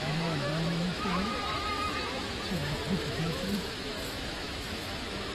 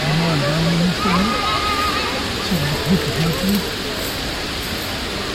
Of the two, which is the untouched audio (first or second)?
second